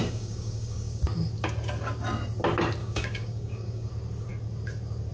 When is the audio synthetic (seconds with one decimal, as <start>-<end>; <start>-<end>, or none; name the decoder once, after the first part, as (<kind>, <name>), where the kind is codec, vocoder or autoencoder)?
0.0-1.0 (codec, DAC); 2.8-3.9

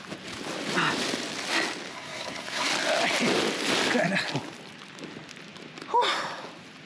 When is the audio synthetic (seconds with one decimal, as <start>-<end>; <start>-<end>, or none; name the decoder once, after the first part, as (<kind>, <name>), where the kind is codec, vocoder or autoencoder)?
1.9-2.7 (codec, SNAC)

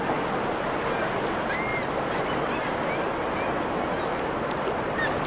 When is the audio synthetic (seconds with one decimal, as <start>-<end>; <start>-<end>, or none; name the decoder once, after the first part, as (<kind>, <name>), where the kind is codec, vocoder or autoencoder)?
none